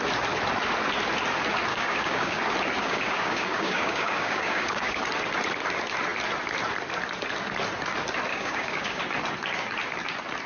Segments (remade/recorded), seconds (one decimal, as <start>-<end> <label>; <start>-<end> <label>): 0.0-1.7 recorded; 1.7-2.4 remade; 2.4-2.8 recorded; 2.8-5.0 remade; 5.0-8.3 recorded; 8.3-9.0 remade; 9.0-10.5 recorded